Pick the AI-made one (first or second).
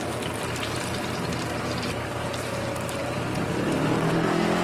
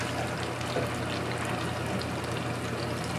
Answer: first